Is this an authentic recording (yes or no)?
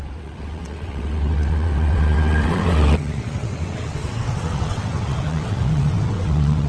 no